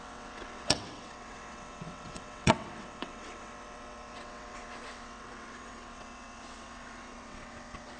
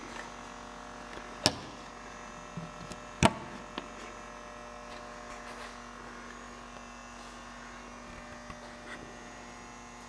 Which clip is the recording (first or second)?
second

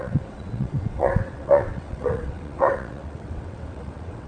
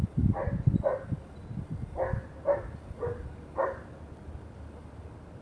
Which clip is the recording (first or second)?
second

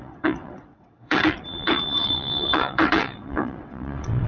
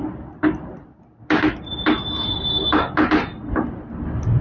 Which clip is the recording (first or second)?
second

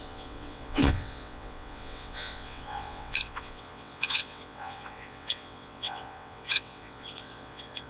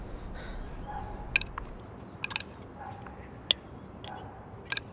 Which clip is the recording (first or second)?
second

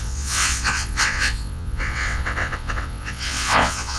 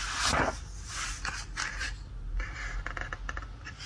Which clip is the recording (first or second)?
second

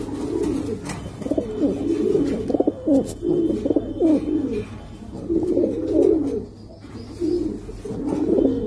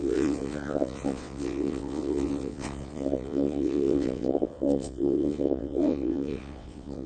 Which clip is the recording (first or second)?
first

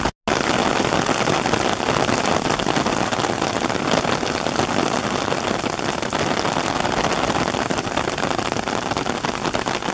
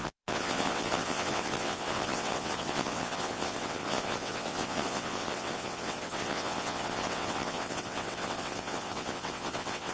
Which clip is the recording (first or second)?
first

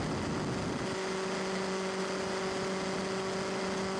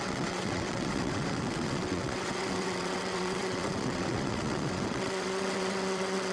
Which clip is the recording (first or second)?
first